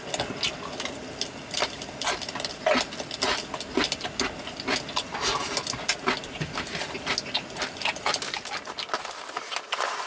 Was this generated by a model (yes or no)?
no